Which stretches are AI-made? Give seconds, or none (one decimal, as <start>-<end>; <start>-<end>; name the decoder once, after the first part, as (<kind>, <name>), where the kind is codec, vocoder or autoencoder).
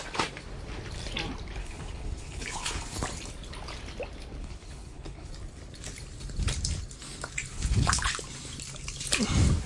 1.6-3.0 (codec, HILCodec); 4.4-5.3; 7.5-8.1